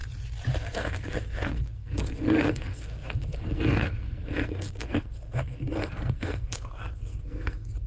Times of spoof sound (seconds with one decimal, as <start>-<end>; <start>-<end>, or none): 0.6-7.9